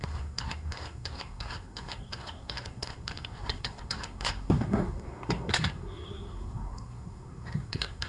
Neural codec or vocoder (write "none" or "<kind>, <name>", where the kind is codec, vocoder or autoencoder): codec, SNAC